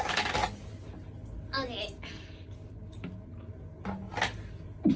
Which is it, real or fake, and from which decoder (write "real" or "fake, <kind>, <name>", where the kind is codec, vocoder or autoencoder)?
real